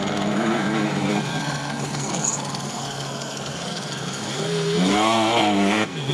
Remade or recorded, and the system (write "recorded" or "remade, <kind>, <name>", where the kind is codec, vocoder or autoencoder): remade, codec, SNAC